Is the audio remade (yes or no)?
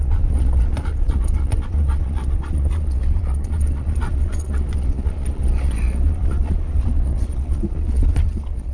yes